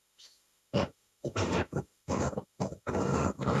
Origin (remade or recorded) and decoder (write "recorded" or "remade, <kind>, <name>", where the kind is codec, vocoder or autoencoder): remade, autoencoder, DAC-VAE